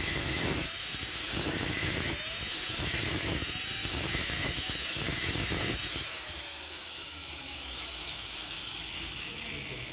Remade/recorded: remade